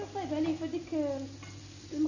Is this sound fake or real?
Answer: real